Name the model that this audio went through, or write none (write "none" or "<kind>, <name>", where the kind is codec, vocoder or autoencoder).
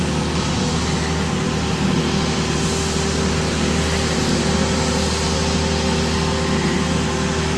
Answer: none